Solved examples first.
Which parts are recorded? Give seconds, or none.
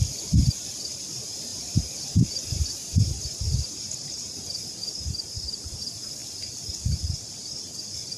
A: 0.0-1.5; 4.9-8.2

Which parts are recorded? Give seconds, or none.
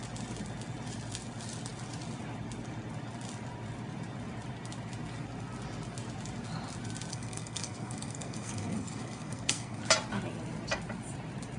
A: 0.0-7.1; 9.8-11.6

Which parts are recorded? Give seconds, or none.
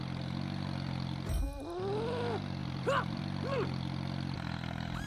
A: 0.0-2.6; 3.2-5.1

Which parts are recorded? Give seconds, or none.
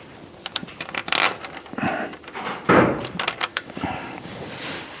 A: 0.0-3.5; 4.4-5.0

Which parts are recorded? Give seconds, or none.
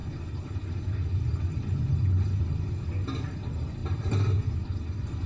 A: 0.0-5.3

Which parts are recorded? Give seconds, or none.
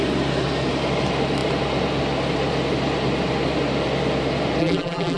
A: 0.0-4.6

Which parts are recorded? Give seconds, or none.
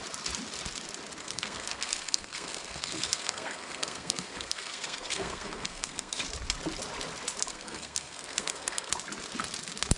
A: 0.0-1.2; 6.2-7.5; 8.9-10.0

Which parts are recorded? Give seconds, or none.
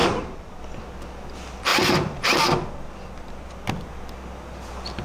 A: 0.6-1.7; 2.4-5.0